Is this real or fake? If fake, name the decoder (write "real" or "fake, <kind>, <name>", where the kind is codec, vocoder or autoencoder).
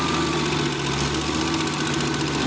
real